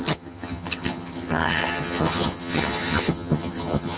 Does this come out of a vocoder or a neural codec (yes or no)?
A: yes